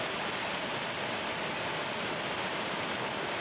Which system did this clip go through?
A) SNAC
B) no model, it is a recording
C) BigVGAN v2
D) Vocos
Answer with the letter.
C